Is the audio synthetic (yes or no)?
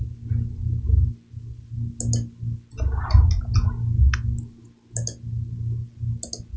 no